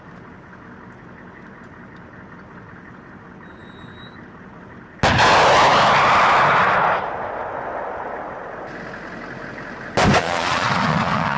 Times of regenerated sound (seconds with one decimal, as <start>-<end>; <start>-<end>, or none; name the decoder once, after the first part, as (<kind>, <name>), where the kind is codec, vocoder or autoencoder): 10.2-11.4 (vocoder, Vocos)